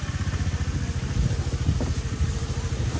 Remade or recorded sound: recorded